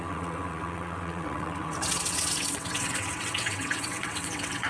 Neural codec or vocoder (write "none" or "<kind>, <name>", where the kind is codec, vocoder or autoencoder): vocoder, WaveNeXt